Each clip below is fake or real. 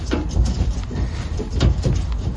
real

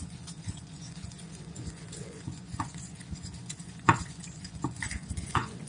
fake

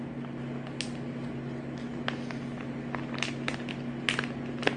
real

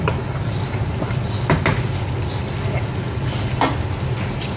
real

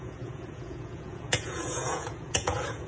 fake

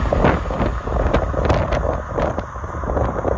real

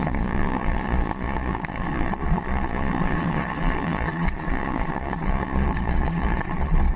fake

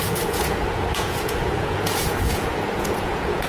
fake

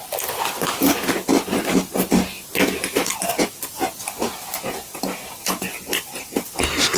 real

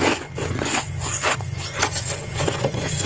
fake